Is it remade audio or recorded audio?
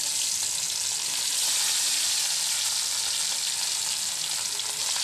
recorded